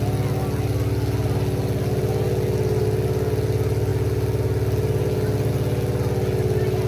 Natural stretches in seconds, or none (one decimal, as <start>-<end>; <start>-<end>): 0.0-6.9